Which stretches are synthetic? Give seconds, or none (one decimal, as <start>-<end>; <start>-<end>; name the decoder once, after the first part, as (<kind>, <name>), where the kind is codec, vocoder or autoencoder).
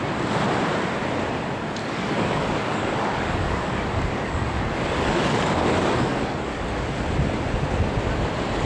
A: 1.8-6.9 (codec, DAC)